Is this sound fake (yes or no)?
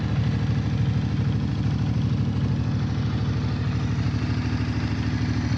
no